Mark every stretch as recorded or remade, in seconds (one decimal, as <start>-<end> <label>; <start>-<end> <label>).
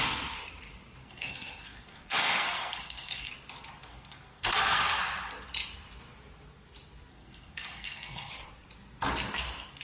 0.0-1.0 recorded; 1.0-3.3 remade; 3.3-3.9 recorded; 3.9-5.0 remade; 5.0-7.1 recorded; 7.1-8.3 remade; 8.3-9.8 recorded